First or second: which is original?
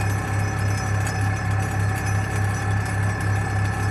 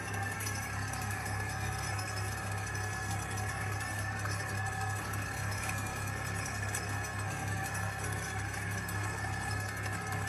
first